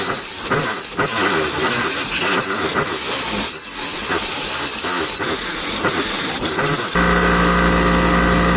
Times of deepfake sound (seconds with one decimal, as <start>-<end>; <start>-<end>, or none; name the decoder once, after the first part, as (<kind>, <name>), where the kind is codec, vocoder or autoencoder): none